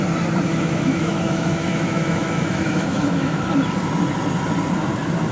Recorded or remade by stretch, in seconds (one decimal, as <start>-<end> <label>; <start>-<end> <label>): 0.0-0.5 recorded; 0.5-3.4 remade; 3.4-5.3 recorded